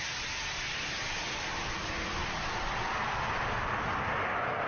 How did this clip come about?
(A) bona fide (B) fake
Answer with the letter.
A